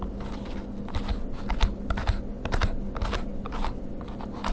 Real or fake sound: real